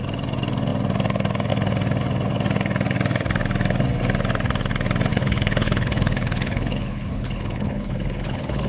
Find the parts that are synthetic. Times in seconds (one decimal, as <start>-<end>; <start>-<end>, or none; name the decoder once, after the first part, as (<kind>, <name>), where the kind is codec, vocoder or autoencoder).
5.1-8.7 (codec, HILCodec)

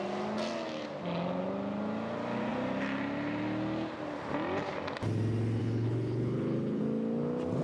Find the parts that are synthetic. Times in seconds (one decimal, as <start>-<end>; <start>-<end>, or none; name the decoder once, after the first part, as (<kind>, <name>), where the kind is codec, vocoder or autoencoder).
5.6-6.8 (codec, HILCodec)